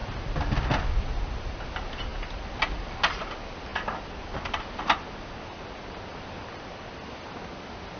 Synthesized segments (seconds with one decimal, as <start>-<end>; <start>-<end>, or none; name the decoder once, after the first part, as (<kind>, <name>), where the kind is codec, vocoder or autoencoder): none